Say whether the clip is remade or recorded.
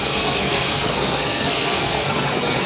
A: remade